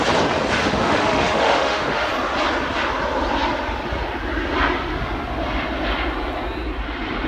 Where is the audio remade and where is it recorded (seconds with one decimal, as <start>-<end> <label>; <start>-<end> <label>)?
0.0-0.6 recorded; 0.6-2.1 remade; 2.1-7.3 recorded